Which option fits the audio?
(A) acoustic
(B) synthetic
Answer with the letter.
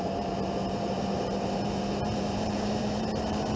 B